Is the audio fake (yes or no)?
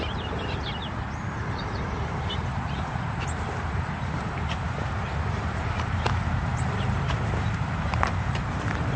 yes